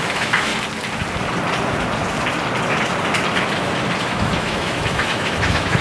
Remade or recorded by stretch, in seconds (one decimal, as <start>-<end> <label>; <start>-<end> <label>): 0.0-0.5 remade; 0.5-4.0 recorded; 4.0-5.8 remade